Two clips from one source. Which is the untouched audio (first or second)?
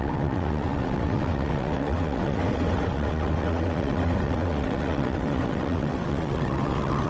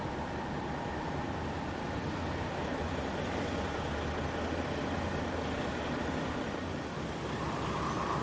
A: second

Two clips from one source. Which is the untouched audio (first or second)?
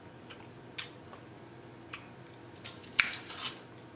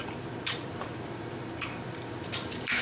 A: first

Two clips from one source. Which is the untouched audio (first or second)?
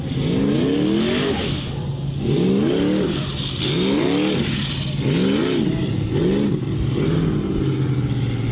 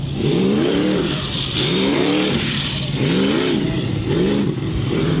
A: first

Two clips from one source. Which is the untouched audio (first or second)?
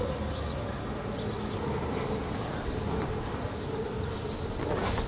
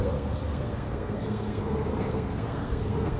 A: first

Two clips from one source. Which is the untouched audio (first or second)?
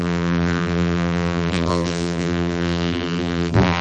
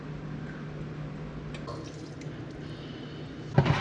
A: second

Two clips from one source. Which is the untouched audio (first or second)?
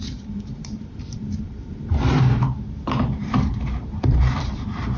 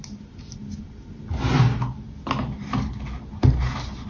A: second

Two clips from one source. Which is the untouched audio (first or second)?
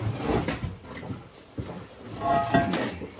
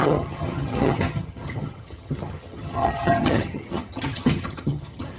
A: first